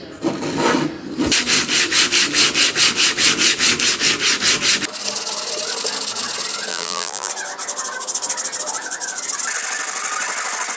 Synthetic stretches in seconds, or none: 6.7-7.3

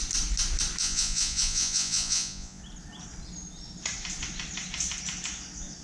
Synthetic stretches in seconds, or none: 0.8-2.6

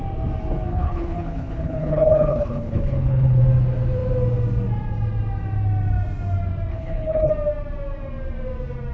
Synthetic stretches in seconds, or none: 0.7-3.4; 6.7-7.3